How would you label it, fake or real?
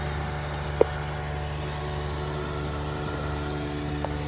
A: real